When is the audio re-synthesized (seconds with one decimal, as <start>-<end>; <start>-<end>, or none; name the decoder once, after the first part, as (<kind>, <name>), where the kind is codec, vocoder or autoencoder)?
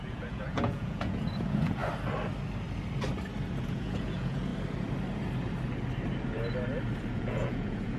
0.0-1.8 (vocoder, Vocos); 3.6-4.5; 7.1-8.0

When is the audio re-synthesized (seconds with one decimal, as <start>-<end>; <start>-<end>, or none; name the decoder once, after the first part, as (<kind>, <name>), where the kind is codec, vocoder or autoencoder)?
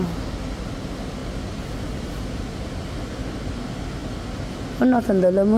none